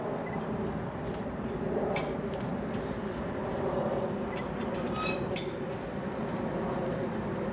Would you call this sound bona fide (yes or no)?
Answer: yes